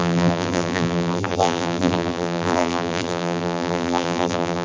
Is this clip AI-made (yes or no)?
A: yes